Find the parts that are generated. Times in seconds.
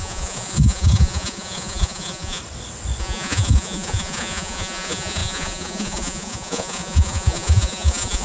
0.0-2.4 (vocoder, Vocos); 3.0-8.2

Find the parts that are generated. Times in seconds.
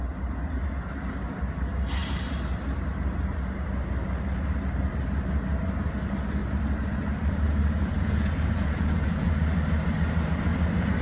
7.8-9.3 (vocoder, Vocos)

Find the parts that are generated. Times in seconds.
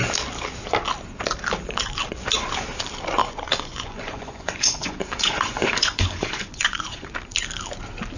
3.2-7.1 (vocoder, Vocos)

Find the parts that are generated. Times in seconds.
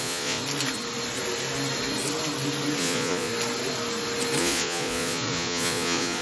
0.0-0.4 (vocoder, Vocos); 2.8-3.3; 4.4-6.2